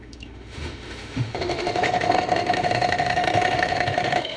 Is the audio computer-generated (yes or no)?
yes